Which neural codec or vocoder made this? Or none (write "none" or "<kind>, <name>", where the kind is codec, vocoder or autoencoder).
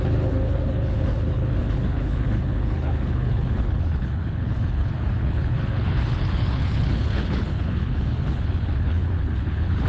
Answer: codec, HILCodec